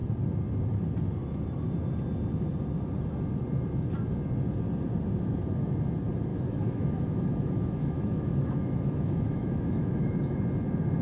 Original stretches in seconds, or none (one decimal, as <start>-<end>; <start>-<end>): 0.0-6.3; 10.4-11.0